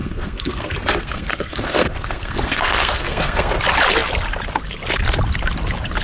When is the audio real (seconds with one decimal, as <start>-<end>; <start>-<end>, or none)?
3.6-6.0